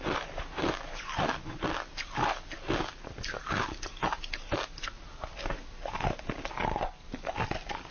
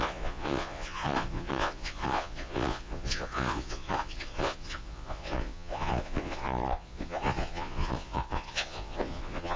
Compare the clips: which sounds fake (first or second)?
second